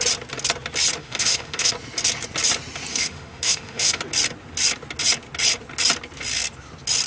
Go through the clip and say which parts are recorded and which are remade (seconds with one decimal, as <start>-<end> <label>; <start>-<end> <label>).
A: 0.0-1.0 recorded; 1.0-1.7 remade; 1.7-2.9 recorded; 2.9-4.0 remade; 4.0-7.1 recorded